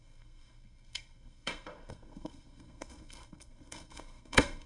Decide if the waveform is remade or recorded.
remade